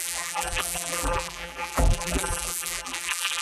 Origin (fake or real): fake